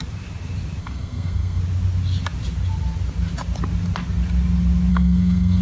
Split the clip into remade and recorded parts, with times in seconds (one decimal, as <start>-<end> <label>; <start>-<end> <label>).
0.0-0.8 recorded; 0.8-1.6 remade; 1.6-4.9 recorded; 4.9-5.6 remade